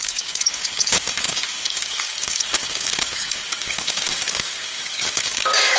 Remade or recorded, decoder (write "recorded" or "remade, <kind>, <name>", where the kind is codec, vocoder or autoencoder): remade, codec, DAC